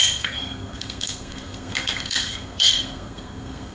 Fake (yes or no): yes